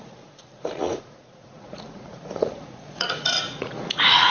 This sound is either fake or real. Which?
fake